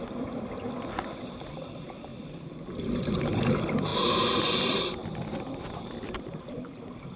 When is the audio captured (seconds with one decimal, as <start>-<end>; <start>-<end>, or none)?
3.9-4.5